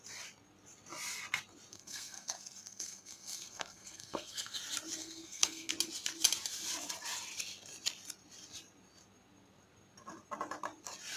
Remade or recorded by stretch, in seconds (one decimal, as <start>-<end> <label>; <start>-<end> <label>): 0.0-1.7 recorded; 1.7-4.6 remade; 4.6-5.0 recorded; 5.0-5.7 remade; 5.7-11.2 recorded